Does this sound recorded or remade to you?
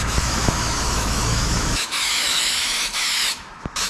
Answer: remade